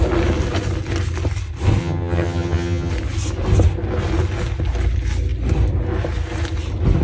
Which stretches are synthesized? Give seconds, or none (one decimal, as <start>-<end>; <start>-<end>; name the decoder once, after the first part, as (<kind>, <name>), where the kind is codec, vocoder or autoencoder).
1.8-2.9 (vocoder, HiFi-GAN)